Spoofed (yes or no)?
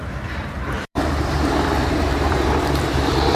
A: yes